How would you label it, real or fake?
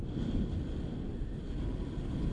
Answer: real